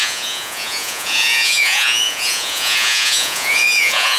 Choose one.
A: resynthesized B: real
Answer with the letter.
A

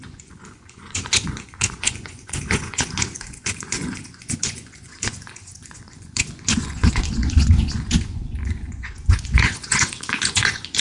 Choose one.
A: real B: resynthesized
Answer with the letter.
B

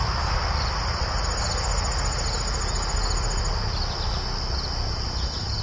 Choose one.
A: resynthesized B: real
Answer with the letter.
B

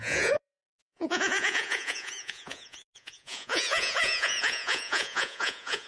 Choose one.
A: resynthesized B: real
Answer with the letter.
A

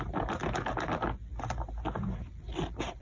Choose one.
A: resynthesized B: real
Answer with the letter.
B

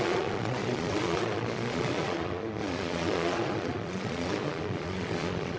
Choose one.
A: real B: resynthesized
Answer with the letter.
B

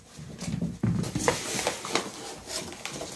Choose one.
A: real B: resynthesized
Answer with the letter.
A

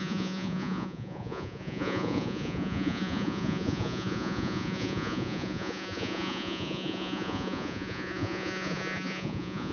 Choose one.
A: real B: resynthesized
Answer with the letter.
B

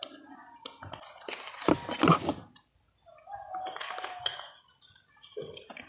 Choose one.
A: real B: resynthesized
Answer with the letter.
A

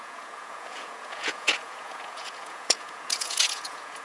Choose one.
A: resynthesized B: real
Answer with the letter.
A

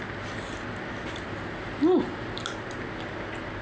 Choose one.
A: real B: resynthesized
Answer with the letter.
A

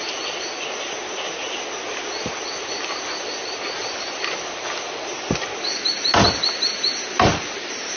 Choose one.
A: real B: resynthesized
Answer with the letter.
A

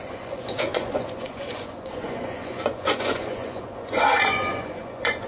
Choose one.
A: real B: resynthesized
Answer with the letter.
B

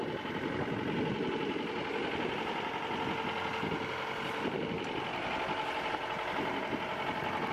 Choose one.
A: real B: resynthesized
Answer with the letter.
A